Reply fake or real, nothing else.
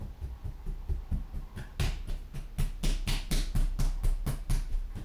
real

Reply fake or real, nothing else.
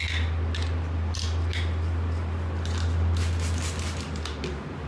real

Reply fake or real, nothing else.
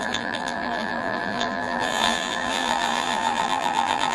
fake